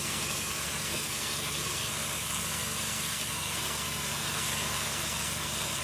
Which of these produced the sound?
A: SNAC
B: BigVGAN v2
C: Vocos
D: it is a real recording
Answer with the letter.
A